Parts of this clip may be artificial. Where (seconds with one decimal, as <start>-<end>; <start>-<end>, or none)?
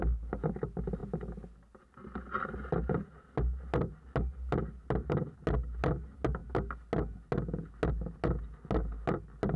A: none